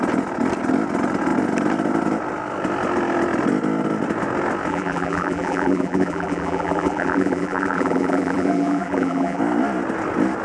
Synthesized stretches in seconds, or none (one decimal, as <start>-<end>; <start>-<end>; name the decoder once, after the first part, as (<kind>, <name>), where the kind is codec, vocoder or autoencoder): 4.7-9.4 (vocoder, BigVGAN v2)